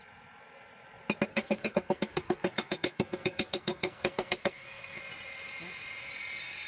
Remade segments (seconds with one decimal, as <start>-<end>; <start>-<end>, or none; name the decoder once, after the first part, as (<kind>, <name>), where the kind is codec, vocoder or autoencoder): 1.3-5.0 (codec, SNAC)